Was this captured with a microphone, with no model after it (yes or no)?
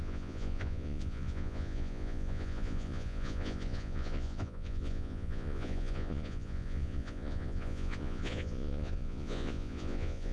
no